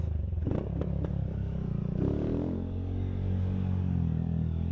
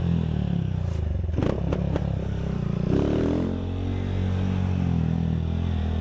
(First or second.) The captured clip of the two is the second